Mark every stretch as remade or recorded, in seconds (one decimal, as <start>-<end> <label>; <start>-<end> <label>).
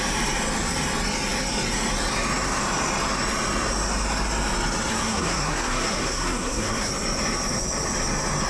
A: 0.0-4.9 recorded; 4.9-6.9 remade; 6.9-8.5 recorded